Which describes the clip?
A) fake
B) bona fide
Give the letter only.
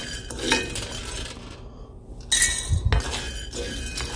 B